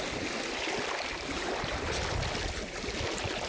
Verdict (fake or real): real